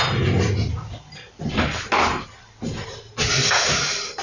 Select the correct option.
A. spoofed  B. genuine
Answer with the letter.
B